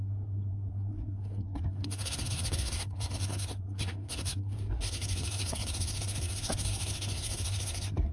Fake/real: fake